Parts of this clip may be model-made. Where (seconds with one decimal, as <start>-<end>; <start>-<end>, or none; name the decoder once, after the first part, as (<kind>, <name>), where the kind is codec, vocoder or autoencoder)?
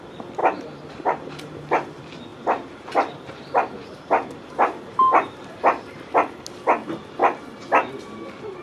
0.4-1.9 (vocoder, BigVGAN v2); 2.3-6.1